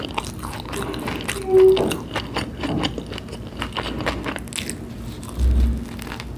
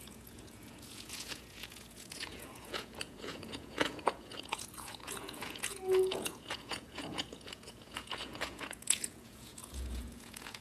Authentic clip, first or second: first